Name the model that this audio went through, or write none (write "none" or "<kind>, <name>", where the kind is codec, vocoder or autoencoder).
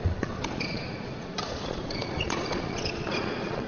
vocoder, Vocos